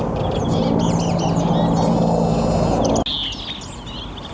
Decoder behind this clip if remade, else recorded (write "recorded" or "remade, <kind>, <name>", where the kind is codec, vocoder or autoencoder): recorded